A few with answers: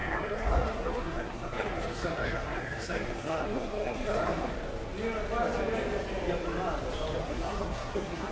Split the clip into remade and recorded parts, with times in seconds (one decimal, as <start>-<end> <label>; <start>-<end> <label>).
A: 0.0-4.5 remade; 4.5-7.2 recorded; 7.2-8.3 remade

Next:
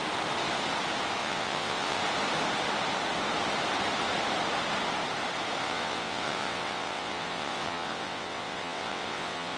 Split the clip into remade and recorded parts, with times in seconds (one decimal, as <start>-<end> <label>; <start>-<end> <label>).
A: 0.0-1.2 recorded; 1.2-2.0 remade; 2.0-5.6 recorded; 5.6-9.6 remade

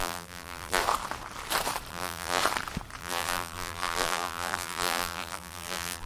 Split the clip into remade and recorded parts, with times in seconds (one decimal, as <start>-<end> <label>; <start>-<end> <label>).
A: 0.0-0.8 remade; 0.8-1.9 recorded; 1.9-2.4 remade; 2.4-3.0 recorded; 3.0-6.1 remade

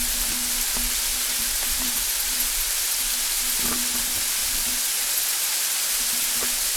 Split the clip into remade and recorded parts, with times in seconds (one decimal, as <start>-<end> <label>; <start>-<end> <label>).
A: 0.0-1.1 recorded; 1.1-3.4 remade; 3.4-4.4 recorded; 4.4-5.1 remade; 5.1-6.8 recorded

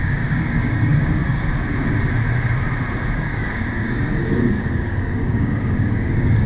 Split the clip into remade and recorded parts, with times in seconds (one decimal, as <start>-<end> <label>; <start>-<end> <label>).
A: 0.0-1.5 remade; 1.5-3.1 recorded; 3.1-6.5 remade

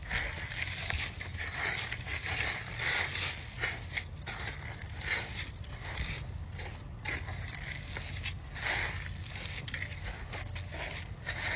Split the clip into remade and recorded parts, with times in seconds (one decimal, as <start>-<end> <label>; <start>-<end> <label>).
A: 0.0-11.6 recorded

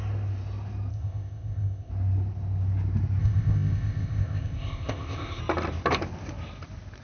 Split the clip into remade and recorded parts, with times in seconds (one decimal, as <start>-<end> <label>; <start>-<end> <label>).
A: 0.0-0.9 recorded; 0.9-1.9 remade; 1.9-3.2 recorded; 3.2-5.4 remade; 5.4-7.0 recorded